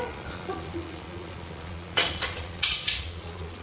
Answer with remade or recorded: remade